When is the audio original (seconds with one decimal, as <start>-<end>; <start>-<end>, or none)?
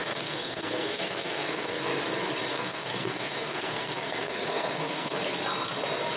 1.9-2.5; 5.2-6.2